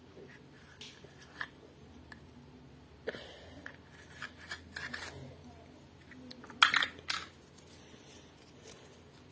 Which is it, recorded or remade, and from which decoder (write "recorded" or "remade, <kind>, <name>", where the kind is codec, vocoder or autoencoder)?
recorded